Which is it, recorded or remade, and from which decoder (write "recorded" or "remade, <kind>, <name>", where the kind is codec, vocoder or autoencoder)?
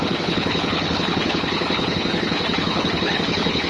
remade, codec, HILCodec